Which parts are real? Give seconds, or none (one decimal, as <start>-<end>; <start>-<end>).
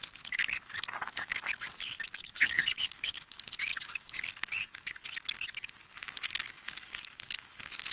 none